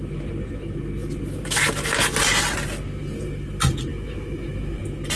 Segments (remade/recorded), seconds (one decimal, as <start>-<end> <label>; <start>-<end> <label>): 0.0-3.9 recorded; 3.9-4.8 remade; 4.8-5.2 recorded